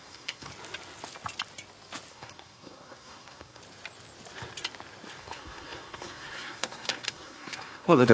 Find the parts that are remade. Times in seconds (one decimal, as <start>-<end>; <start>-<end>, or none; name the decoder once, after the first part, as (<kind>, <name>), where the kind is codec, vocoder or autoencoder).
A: 0.0-0.5 (codec, SNAC); 2.1-3.6; 5.2-8.1